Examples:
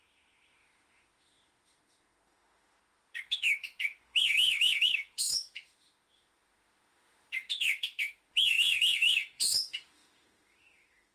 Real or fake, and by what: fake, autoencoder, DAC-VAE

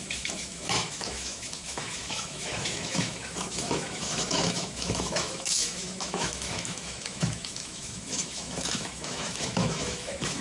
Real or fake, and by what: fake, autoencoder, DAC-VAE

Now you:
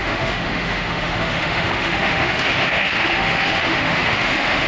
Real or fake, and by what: fake, autoencoder, DAC-VAE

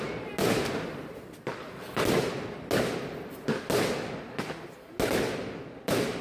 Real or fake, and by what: real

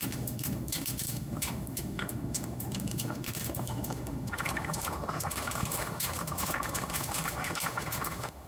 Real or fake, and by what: fake, autoencoder, DAC-VAE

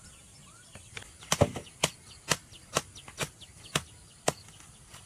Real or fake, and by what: real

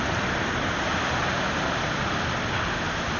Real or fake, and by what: real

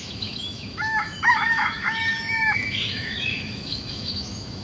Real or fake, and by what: fake, autoencoder, DAC-VAE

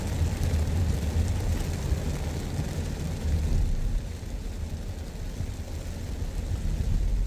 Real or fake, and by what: real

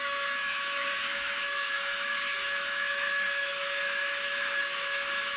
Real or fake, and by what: fake, autoencoder, DAC-VAE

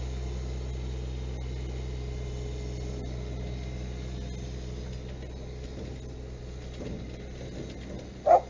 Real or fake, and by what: real